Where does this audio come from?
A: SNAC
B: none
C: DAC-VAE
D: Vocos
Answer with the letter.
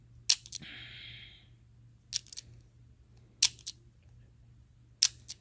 B